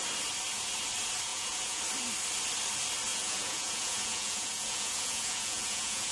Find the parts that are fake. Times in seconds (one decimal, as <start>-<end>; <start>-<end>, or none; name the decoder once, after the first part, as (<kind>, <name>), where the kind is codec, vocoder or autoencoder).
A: 1.3-1.8 (vocoder, Vocos); 3.1-6.1

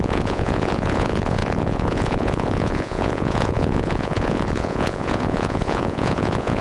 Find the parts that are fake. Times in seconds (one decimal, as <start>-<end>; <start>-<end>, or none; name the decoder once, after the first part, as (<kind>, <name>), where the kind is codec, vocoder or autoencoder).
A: 0.0-6.6 (vocoder, Vocos)

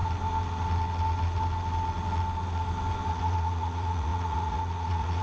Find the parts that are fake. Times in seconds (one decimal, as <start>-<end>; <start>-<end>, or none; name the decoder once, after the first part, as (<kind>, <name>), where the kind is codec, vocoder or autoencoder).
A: 3.1-5.2 (vocoder, Vocos)

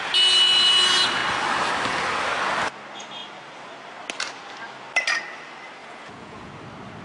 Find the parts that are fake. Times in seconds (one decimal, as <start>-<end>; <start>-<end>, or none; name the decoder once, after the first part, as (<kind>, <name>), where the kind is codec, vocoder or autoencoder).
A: 5.8-6.5 (vocoder, Vocos)

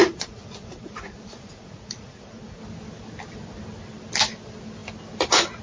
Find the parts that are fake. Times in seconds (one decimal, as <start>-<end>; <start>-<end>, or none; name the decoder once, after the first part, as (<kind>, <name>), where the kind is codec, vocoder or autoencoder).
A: 0.0-2.6 (vocoder, Vocos)

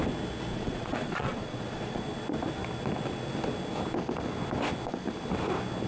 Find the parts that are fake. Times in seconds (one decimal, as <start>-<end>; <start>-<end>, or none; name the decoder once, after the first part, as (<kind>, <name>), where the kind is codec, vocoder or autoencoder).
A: 0.5-2.0 (vocoder, Vocos)

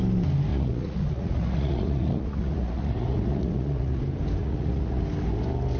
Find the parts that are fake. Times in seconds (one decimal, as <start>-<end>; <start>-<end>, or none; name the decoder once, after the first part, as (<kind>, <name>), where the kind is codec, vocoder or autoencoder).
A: 0.5-4.0 (vocoder, Vocos); 4.4-5.0